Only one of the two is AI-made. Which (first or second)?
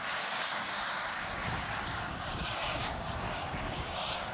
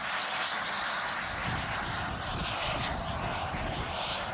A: first